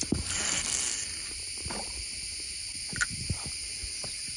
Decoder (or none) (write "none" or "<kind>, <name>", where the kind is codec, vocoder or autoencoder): vocoder, BigVGAN v2